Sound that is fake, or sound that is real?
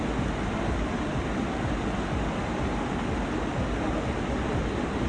real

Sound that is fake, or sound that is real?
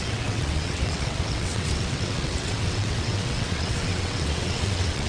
fake